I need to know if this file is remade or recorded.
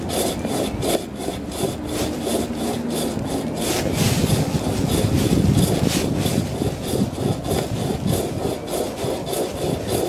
recorded